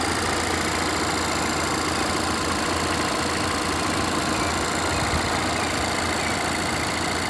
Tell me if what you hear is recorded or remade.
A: recorded